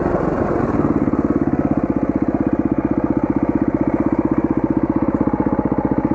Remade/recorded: recorded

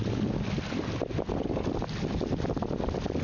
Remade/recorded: recorded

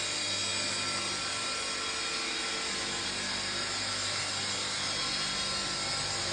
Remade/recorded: recorded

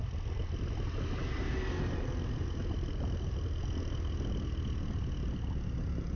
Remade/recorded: recorded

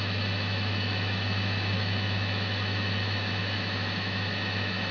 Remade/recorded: remade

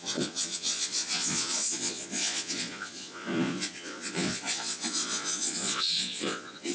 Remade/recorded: remade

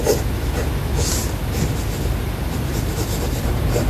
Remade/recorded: recorded